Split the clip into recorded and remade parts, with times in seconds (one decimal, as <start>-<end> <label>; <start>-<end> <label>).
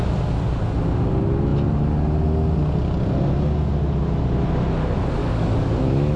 0.0-5.2 recorded; 5.2-5.8 remade; 5.8-6.2 recorded